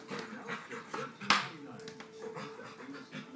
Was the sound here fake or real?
real